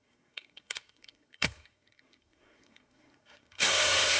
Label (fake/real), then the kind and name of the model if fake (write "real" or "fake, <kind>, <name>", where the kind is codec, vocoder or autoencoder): fake, codec, SNAC